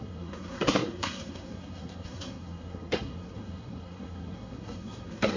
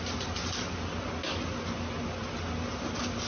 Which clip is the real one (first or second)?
second